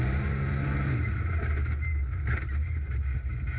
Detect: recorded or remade recorded